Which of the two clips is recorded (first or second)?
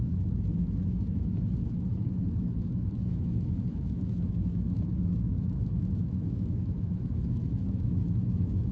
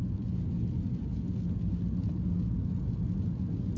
second